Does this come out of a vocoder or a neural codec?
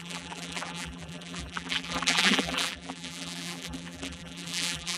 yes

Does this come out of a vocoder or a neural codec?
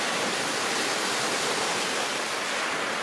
no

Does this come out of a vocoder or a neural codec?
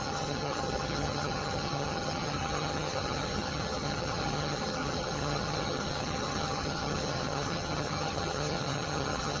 yes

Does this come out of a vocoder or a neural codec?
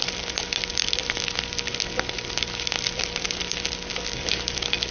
no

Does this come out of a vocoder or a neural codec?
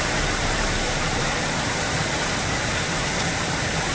yes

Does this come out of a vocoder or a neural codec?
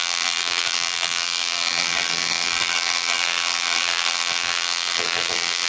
yes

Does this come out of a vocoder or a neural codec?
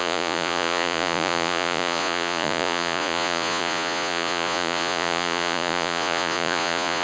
yes